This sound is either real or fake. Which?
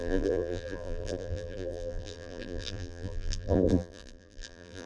fake